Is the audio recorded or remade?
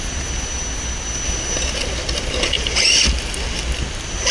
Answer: recorded